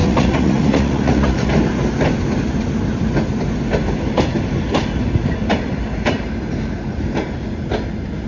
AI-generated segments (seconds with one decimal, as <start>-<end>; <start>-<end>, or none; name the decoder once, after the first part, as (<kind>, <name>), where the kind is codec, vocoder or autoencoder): 0.0-1.5 (vocoder, Vocos)